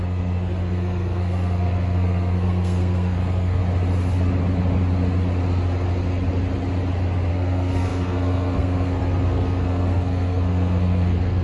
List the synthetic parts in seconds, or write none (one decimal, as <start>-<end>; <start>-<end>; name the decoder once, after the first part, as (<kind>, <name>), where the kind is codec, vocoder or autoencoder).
0.0-3.6 (codec, SNAC); 7.3-11.4